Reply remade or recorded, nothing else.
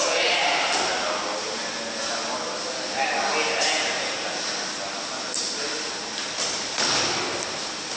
recorded